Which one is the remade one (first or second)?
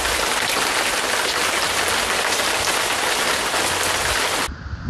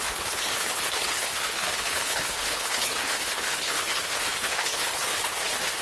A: second